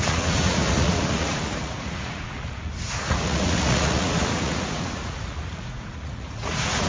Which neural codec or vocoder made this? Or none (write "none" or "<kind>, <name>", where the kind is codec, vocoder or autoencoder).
vocoder, Vocos